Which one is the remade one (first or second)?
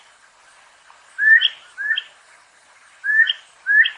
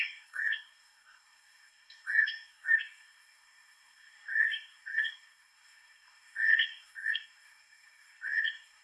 second